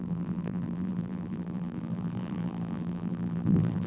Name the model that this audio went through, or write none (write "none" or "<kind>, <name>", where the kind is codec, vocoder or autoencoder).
vocoder, BigVGAN v2